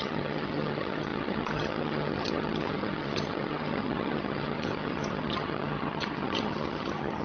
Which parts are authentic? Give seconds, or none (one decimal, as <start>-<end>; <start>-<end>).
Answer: none